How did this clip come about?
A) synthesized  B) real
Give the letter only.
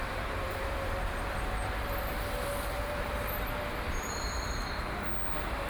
A